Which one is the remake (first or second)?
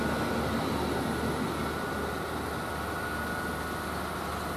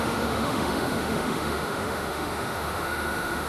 second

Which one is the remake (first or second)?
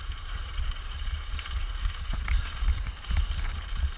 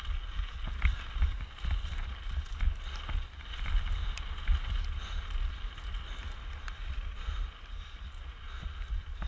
first